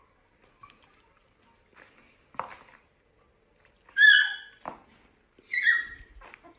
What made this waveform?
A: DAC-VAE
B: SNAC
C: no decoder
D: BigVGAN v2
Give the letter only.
C